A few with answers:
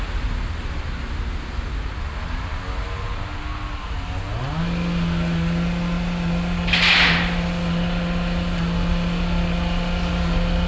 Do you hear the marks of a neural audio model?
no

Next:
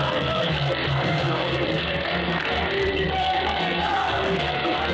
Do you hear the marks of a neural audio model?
yes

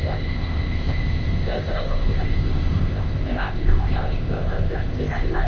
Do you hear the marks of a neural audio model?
yes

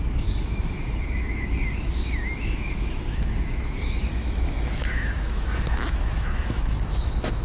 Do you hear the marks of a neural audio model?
yes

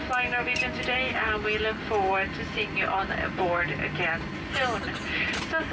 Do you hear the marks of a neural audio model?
no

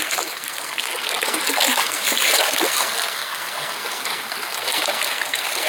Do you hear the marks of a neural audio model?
yes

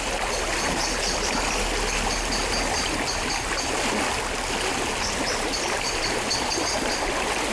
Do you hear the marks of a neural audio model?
no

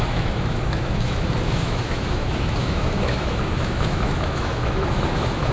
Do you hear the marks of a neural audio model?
yes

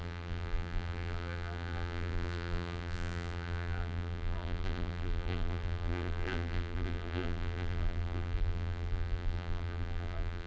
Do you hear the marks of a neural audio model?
yes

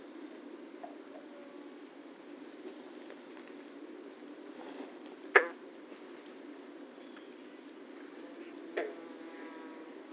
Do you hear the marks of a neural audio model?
no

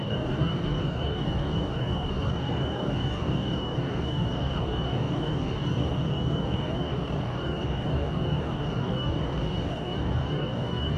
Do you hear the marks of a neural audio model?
yes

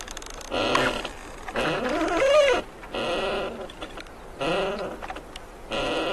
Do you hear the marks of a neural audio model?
no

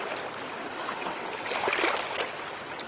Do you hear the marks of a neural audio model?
no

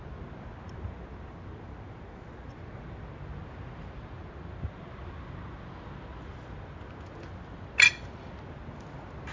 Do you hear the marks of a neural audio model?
no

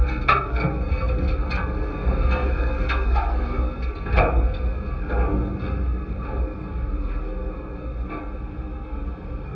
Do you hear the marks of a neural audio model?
yes